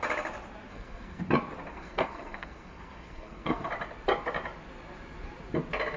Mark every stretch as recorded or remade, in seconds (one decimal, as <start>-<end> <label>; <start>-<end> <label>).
0.0-0.7 recorded; 0.7-1.2 remade; 1.2-1.7 recorded; 1.7-3.7 remade; 3.7-6.0 recorded